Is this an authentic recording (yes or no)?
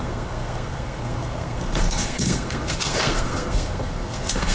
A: no